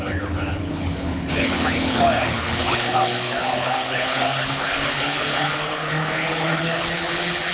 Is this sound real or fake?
fake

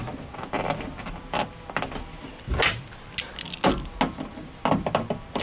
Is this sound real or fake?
real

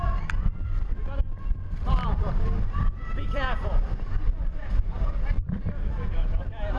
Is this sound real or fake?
fake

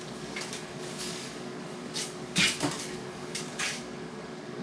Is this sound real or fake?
fake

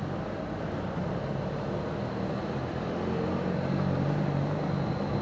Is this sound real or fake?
real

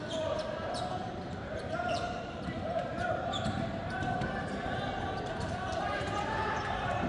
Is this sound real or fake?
fake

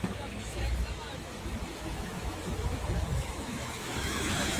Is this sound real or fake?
fake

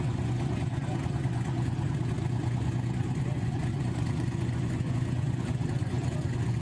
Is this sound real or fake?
fake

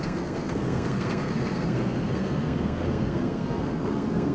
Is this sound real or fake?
fake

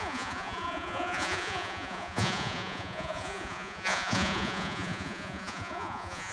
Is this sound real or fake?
fake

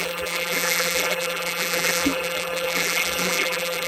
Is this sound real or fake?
fake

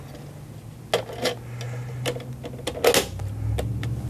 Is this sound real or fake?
real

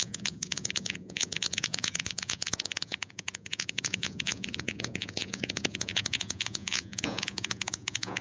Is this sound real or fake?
fake